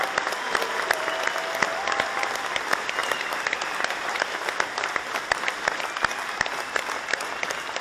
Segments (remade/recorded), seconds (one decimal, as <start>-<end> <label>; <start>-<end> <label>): 0.0-3.0 recorded; 3.0-5.2 remade; 5.2-7.8 recorded